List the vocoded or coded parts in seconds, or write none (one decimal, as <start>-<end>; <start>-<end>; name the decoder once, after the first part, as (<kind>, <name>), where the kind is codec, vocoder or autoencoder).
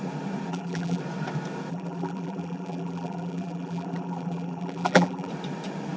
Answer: 0.5-1.0 (vocoder, BigVGAN v2); 1.7-5.3